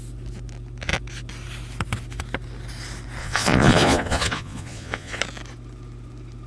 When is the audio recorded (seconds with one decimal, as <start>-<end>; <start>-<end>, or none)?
0.0-3.2; 5.2-6.5